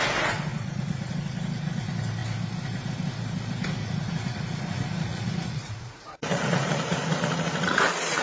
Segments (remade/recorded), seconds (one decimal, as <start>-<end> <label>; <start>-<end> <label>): 0.0-0.5 recorded; 0.5-1.1 remade; 1.1-3.8 recorded; 3.8-8.2 remade